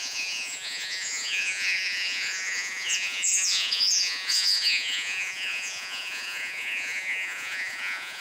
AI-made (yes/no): yes